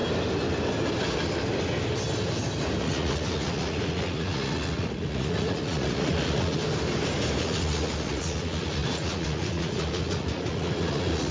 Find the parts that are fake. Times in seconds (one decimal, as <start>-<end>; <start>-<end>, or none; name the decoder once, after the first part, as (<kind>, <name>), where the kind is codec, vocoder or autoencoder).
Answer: 2.8-6.6 (vocoder, Vocos); 7.4-11.3